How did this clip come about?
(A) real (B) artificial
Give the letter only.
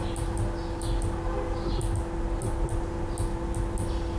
A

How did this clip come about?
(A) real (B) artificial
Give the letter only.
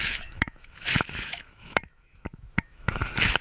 B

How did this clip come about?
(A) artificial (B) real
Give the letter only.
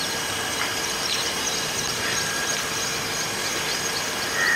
B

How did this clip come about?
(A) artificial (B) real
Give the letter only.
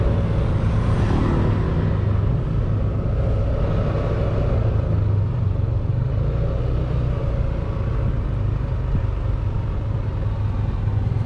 B